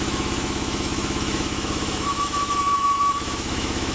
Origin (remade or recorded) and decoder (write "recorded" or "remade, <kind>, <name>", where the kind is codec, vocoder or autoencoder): remade, autoencoder, DAC-VAE